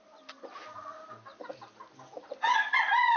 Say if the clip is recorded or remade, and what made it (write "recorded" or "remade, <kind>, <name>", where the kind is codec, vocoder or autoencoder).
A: recorded